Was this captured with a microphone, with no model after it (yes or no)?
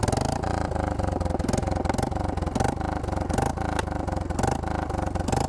yes